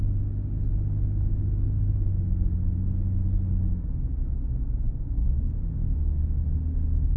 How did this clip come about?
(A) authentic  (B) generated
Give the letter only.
A